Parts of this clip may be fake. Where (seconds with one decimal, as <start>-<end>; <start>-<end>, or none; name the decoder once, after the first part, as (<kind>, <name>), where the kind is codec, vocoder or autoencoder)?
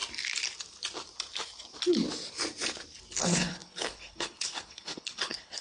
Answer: 3.2-5.6 (codec, HILCodec)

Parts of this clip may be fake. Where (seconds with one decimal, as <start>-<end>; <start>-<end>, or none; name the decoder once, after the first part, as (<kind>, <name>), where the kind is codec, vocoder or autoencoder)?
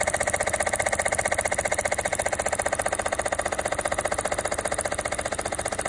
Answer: none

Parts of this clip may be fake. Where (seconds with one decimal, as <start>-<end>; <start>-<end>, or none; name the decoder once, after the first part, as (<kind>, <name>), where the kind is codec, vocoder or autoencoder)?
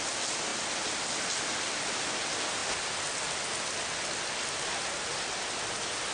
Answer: none